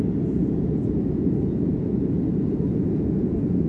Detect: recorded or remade remade